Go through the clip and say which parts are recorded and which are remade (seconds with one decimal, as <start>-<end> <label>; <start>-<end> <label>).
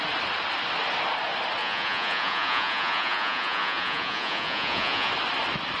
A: 0.0-1.6 recorded; 1.6-5.1 remade; 5.1-5.8 recorded